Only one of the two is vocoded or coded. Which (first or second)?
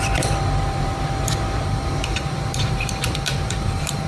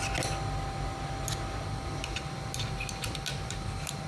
first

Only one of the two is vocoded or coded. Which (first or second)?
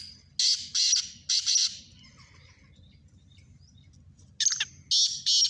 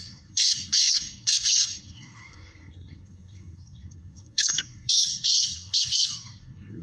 second